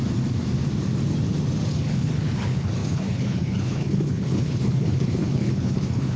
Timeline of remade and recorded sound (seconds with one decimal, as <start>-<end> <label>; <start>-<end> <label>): 0.0-1.7 recorded; 1.7-6.2 remade

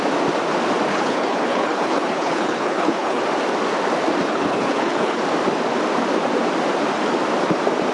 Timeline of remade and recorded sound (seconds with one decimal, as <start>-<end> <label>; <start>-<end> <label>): 0.0-0.9 recorded; 0.9-3.2 remade; 3.2-4.3 recorded; 4.3-5.2 remade; 5.2-7.9 recorded

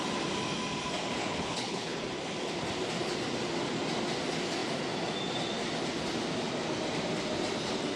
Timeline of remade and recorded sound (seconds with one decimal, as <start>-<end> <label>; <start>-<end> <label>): 0.0-1.2 recorded; 1.2-2.0 remade; 2.0-8.0 recorded

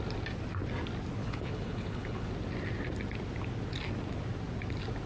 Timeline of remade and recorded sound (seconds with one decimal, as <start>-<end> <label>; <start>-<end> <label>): 0.0-1.2 recorded; 1.2-2.3 remade; 2.3-5.1 recorded

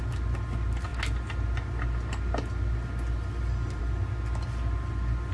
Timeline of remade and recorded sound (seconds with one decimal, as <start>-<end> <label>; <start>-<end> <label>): 0.0-5.3 recorded

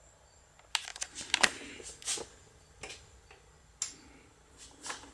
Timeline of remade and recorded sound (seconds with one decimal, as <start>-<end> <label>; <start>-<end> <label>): 0.0-5.1 recorded